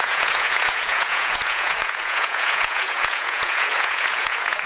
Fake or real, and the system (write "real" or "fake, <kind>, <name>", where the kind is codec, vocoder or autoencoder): fake, vocoder, Vocos